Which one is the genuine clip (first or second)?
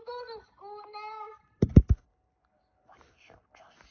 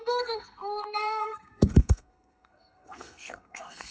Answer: first